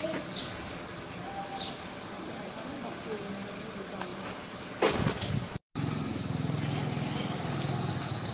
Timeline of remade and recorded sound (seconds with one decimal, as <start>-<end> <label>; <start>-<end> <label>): 0.0-8.3 recorded